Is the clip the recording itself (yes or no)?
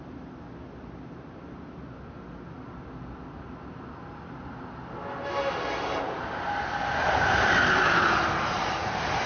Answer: yes